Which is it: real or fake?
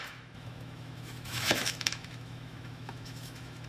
fake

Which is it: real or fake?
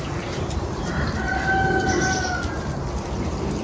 real